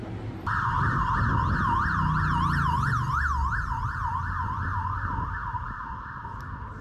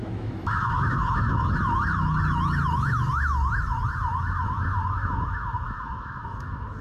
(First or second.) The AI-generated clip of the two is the second